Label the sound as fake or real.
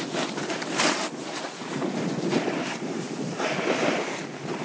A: real